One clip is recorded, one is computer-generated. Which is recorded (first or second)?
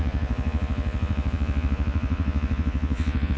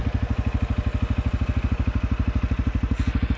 second